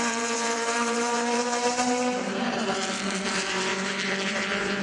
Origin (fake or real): fake